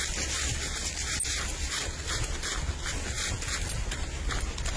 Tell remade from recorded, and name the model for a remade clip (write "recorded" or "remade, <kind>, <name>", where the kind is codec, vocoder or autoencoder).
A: recorded